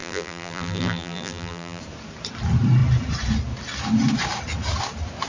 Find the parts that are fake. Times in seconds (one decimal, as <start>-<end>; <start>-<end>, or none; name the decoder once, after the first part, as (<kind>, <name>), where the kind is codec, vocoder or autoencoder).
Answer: 0.0-1.8 (vocoder, BigVGAN v2)